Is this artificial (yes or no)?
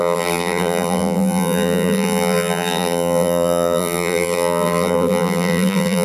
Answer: yes